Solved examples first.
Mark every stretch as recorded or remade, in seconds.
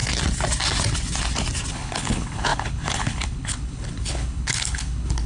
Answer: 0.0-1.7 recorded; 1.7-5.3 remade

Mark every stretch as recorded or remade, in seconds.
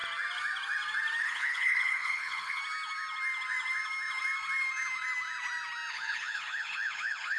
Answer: 0.0-1.2 recorded; 1.2-2.6 remade; 2.6-5.9 recorded; 5.9-7.4 remade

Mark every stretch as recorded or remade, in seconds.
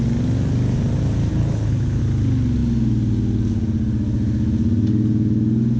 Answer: 0.0-1.3 recorded; 1.3-2.0 remade; 2.0-5.8 recorded